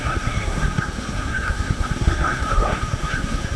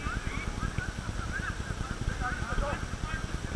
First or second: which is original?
second